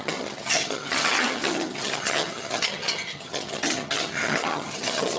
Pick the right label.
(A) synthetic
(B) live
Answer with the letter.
A